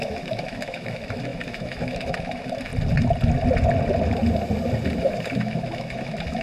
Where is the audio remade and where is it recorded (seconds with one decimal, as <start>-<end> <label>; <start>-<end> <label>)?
0.0-2.7 remade; 2.7-5.0 recorded; 5.0-6.4 remade